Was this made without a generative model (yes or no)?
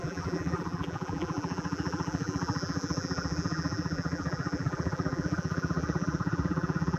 no